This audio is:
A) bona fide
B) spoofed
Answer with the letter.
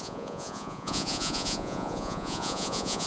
B